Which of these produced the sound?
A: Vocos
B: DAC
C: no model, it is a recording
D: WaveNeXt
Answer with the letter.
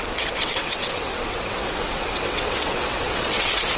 D